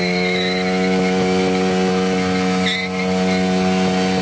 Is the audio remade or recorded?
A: recorded